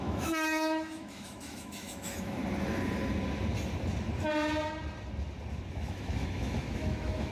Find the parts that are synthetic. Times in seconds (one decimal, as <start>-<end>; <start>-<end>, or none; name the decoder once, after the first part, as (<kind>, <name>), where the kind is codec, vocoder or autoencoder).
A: 0.0-2.4 (autoencoder, DAC-VAE); 5.7-7.3